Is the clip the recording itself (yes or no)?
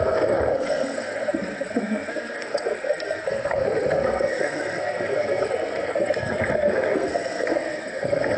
no